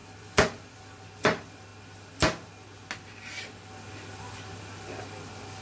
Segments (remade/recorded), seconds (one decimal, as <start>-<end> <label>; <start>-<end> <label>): 0.0-1.0 remade; 1.0-5.6 recorded